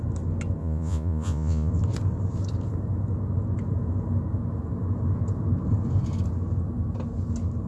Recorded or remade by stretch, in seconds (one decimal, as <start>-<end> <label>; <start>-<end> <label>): 0.0-0.6 recorded; 0.6-1.7 remade; 1.7-7.7 recorded